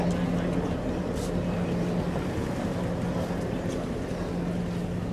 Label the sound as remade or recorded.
recorded